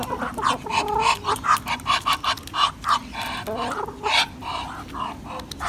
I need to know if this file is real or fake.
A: real